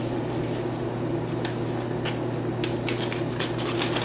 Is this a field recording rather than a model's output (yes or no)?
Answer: yes